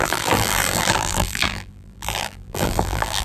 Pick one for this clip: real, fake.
fake